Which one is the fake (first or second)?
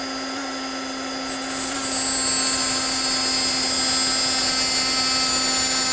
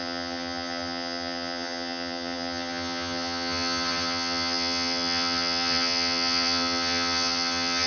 second